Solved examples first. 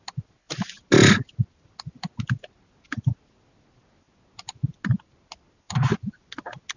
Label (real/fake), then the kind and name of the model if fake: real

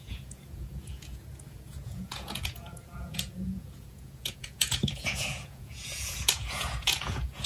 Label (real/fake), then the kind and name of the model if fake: fake, vocoder, Vocos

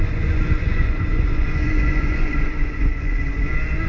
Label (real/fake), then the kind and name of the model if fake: fake, vocoder, Vocos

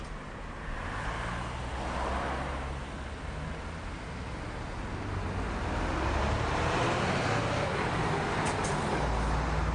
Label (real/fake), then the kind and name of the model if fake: real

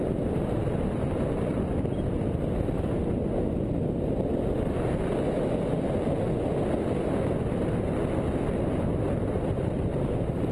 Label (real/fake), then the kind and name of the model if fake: real